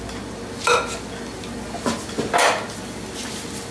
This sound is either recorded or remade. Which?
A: recorded